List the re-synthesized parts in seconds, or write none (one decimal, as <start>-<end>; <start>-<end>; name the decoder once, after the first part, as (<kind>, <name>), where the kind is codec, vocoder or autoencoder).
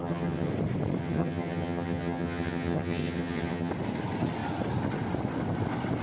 0.0-0.5 (vocoder, HiFi-GAN); 1.0-3.7